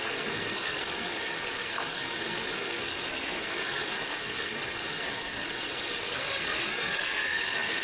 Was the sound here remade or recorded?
remade